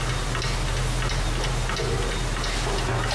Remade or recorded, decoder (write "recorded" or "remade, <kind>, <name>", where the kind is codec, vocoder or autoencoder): recorded